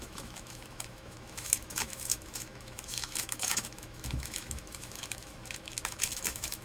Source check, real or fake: fake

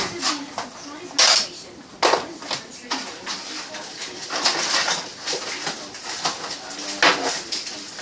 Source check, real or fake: real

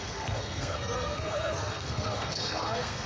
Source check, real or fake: fake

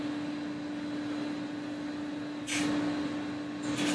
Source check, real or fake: real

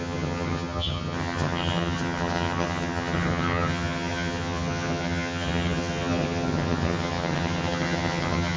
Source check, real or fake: fake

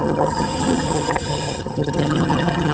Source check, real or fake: fake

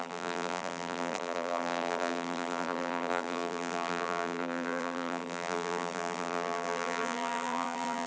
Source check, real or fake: fake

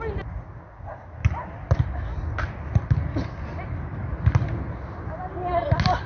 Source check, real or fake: real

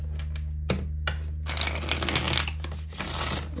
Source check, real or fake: real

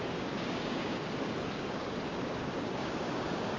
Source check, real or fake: fake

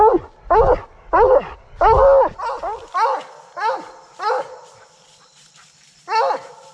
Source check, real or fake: real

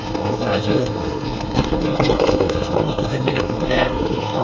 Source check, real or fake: fake